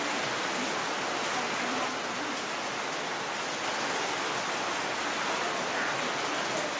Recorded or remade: recorded